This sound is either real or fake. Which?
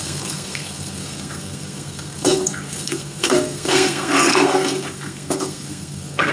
fake